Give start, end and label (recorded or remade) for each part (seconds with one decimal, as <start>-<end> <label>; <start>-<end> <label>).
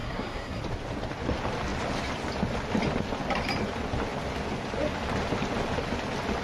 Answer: 0.0-0.6 remade; 0.6-6.4 recorded